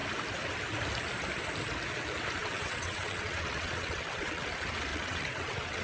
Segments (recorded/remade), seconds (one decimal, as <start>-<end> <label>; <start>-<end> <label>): 0.0-2.4 recorded; 2.4-4.5 remade; 4.5-4.9 recorded; 4.9-5.8 remade